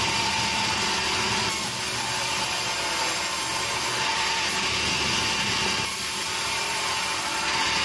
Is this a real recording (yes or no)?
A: yes